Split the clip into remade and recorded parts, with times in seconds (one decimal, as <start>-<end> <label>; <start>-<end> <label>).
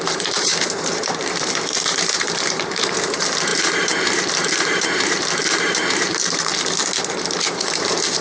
0.0-6.5 remade; 6.5-7.1 recorded; 7.1-8.2 remade